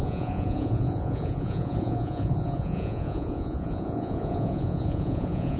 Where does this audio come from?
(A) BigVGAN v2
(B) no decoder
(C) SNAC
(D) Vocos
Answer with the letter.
D